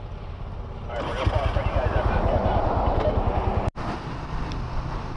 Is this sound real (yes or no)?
yes